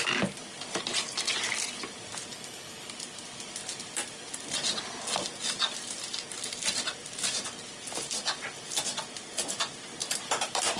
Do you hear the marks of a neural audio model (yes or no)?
no